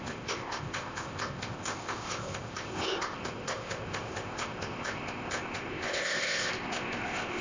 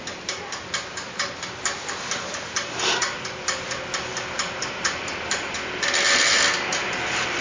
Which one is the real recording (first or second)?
second